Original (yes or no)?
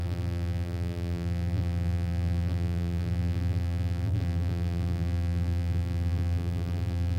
no